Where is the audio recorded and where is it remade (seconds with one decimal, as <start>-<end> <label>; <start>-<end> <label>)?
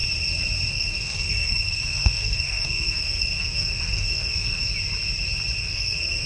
0.0-0.7 recorded; 0.7-4.7 remade; 4.7-5.6 recorded; 5.6-6.3 remade